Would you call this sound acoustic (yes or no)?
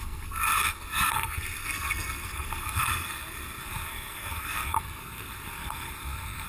no